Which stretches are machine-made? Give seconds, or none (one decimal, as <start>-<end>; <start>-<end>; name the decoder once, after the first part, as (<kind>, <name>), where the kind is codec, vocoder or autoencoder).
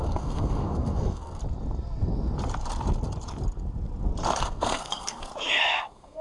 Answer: 0.0-1.4 (codec, SNAC); 4.4-5.3; 5.8-6.2